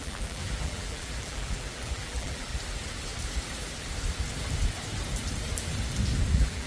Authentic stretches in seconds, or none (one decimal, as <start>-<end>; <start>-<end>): 2.5-6.3